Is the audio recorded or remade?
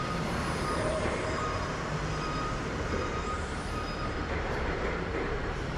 remade